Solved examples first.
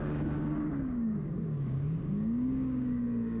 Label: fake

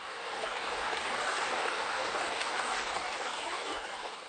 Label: fake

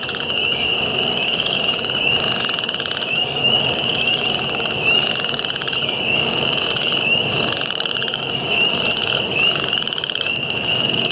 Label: fake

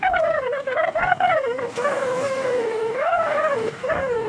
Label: fake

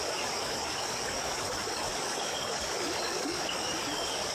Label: fake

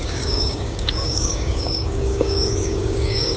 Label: fake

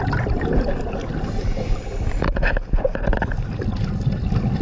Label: real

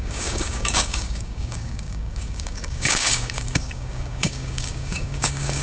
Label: fake